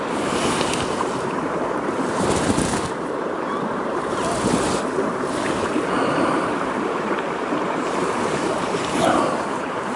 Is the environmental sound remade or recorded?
remade